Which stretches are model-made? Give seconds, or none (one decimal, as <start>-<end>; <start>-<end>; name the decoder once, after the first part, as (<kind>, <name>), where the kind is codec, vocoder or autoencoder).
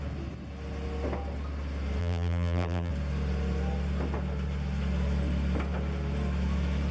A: 2.0-2.9 (vocoder, BigVGAN v2)